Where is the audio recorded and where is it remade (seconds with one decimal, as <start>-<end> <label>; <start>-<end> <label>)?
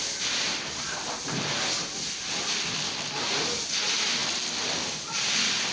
0.0-5.7 recorded